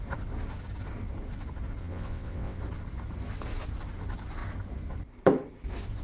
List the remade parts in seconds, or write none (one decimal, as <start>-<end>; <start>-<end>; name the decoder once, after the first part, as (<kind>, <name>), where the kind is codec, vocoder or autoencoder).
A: 1.8-2.6 (vocoder, WaveNeXt)